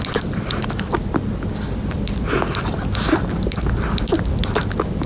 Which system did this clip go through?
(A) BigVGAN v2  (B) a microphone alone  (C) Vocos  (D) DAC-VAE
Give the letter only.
B